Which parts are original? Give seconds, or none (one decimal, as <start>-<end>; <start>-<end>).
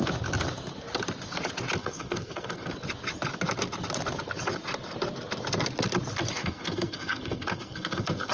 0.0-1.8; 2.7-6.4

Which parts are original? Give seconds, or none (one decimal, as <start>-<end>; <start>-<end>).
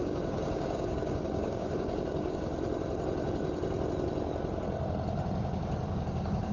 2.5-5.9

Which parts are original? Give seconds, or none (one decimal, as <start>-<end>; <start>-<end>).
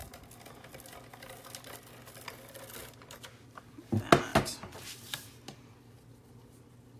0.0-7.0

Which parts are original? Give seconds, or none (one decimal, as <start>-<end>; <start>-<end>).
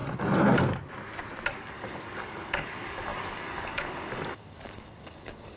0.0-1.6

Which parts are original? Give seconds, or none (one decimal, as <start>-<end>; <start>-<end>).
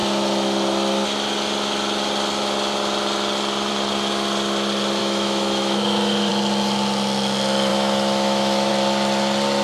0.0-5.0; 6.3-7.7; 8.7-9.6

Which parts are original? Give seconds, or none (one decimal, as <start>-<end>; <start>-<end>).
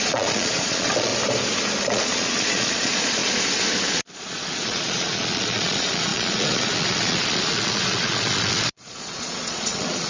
1.1-1.8; 3.2-3.9